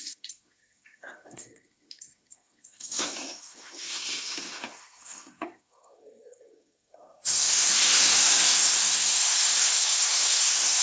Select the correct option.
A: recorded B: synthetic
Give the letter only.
B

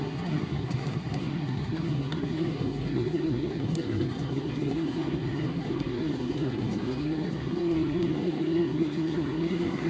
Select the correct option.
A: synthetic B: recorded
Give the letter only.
A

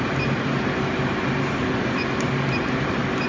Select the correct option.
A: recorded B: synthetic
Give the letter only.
A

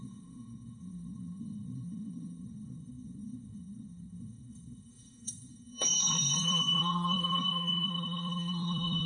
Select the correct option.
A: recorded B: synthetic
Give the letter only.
B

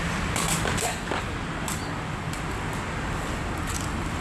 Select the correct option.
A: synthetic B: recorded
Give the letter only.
B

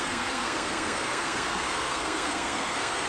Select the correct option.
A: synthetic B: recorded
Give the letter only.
A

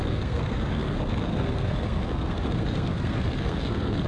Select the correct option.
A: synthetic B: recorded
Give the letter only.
A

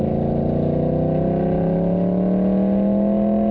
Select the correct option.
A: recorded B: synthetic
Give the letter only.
A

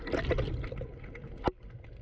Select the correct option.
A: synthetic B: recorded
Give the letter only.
B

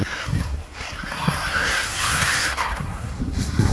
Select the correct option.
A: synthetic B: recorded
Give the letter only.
A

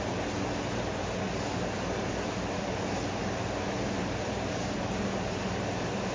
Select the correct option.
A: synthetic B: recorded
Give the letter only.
B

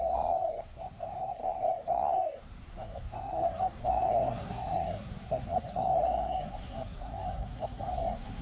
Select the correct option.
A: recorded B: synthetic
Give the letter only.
B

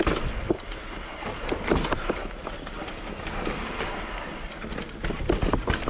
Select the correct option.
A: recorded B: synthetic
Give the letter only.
A